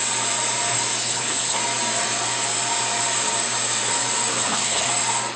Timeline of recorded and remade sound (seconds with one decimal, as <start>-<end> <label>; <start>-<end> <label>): 0.0-1.0 recorded; 1.0-1.6 remade; 1.6-4.3 recorded; 4.3-4.9 remade; 4.9-5.4 recorded